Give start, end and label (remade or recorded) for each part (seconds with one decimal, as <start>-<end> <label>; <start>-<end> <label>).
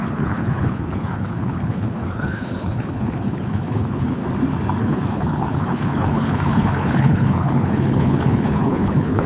0.0-4.2 remade; 4.2-4.8 recorded; 4.8-9.3 remade